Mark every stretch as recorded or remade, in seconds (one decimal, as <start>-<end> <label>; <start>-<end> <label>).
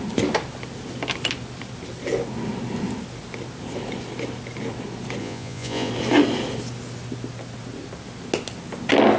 0.0-5.2 recorded; 5.2-5.9 remade; 5.9-9.2 recorded